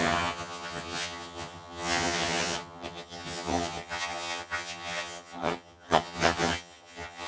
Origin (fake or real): fake